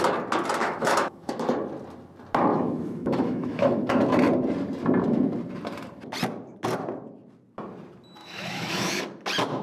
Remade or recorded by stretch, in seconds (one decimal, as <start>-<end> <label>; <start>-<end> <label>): 0.0-0.6 recorded; 0.6-1.3 remade; 1.3-2.5 recorded; 2.5-3.9 remade; 3.9-8.2 recorded; 8.2-9.0 remade; 9.0-9.6 recorded